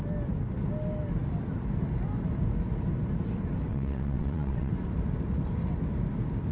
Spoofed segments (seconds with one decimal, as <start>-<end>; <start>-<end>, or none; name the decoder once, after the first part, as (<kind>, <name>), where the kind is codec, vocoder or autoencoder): 3.7-4.7 (vocoder, WaveNeXt)